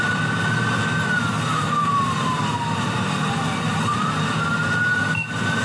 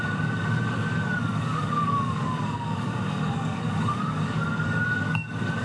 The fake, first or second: second